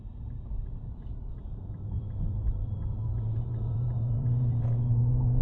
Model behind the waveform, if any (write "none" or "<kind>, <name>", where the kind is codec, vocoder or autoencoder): vocoder, BigVGAN v2